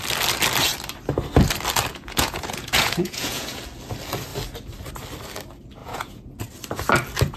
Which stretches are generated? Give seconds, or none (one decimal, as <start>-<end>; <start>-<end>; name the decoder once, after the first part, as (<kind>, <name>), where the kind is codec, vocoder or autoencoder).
1.9-3.6 (vocoder, Vocos); 5.8-6.4

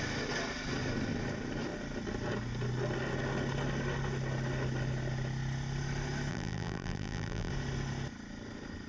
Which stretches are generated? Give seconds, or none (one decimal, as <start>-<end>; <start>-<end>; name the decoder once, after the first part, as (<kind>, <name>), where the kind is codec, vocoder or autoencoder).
6.3-7.5 (vocoder, BigVGAN v2)

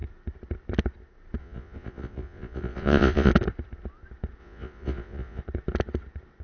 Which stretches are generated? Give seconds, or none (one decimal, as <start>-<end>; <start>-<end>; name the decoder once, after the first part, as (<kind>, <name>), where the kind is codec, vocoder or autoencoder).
1.4-3.3 (vocoder, Vocos); 4.4-5.4

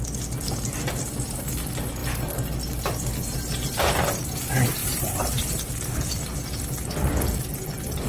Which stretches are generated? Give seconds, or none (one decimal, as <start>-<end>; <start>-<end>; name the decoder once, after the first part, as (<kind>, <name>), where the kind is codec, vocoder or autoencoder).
4.8-5.4 (vocoder, BigVGAN v2)

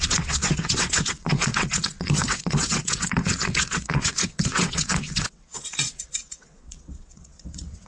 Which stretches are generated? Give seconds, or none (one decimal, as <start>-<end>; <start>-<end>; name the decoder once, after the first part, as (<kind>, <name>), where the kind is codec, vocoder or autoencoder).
0.0-7.9 (vocoder, WaveNeXt)

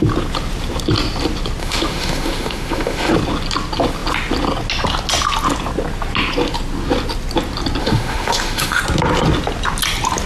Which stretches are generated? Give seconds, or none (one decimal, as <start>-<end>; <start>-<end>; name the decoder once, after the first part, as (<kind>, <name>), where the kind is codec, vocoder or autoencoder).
1.6-3.1 (autoencoder, DAC-VAE); 7.8-8.8

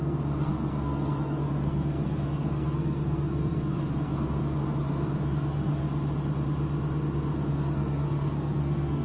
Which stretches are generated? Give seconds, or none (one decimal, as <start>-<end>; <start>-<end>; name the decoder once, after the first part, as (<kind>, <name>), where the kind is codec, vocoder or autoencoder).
0.0-5.7 (codec, SNAC); 7.5-9.0

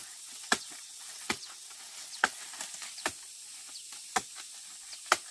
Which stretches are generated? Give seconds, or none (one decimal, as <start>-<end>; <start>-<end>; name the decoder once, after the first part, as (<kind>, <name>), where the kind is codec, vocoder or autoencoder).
0.0-2.5 (vocoder, WaveNeXt)